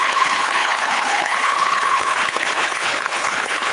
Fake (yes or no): yes